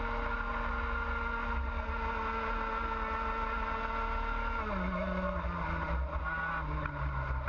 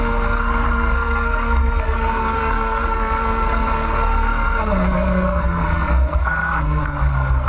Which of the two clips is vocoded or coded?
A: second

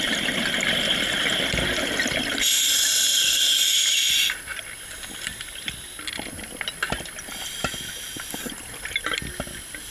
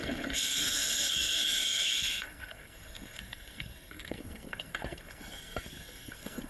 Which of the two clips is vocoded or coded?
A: second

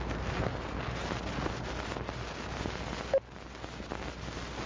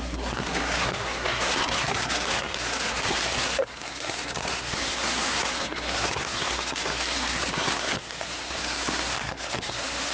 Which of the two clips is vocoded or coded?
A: second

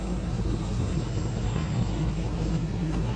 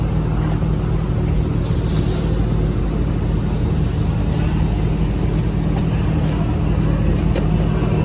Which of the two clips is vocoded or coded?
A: first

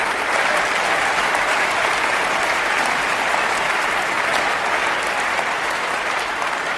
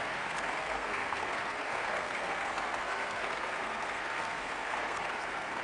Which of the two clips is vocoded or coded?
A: second